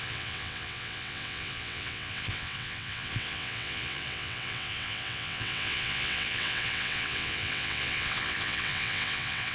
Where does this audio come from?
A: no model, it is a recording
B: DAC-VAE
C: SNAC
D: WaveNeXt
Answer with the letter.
D